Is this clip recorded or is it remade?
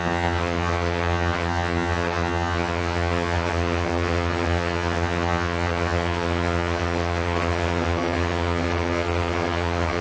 remade